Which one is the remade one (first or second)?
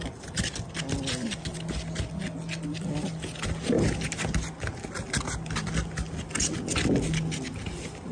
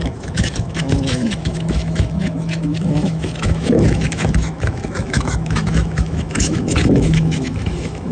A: second